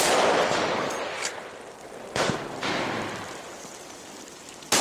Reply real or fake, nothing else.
real